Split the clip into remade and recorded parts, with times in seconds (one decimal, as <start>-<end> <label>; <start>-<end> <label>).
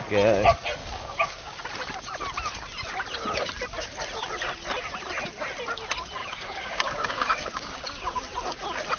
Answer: 0.0-0.8 recorded; 0.8-1.6 remade; 1.6-6.2 recorded; 6.2-7.8 remade; 7.8-9.0 recorded